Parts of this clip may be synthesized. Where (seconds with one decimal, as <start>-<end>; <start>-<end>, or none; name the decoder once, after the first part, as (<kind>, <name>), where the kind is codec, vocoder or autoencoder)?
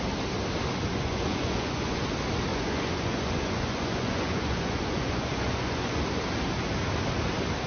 0.9-2.0 (vocoder, Vocos); 2.5-6.0